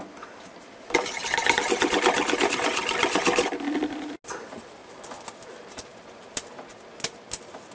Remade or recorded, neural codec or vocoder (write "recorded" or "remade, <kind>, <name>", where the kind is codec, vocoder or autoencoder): recorded